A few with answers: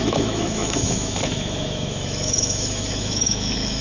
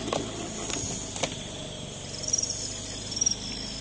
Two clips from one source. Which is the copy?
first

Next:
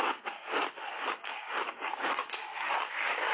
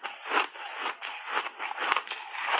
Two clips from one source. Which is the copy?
first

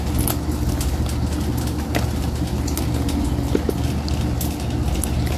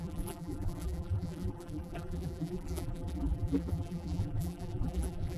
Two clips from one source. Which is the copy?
second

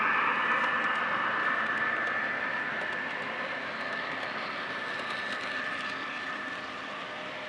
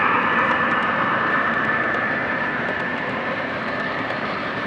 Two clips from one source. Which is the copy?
second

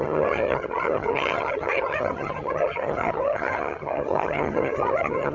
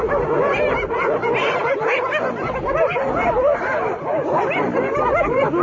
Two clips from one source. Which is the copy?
first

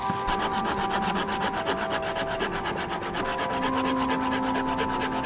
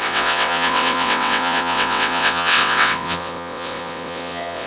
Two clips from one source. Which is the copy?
second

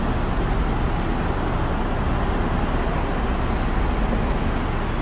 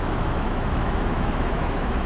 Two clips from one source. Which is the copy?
second